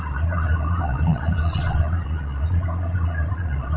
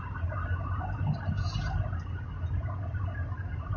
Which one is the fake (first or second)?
first